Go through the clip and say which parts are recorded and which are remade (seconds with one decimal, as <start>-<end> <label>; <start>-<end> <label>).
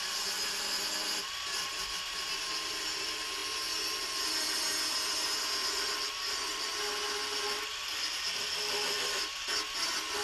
0.0-10.2 recorded